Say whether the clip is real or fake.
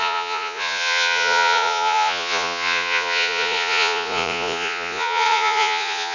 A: fake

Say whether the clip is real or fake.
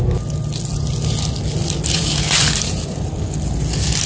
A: real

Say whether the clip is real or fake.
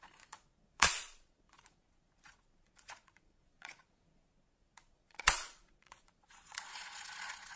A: fake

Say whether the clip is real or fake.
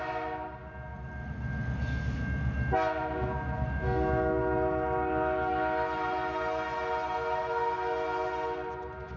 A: real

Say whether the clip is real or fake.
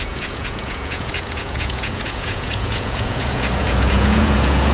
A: fake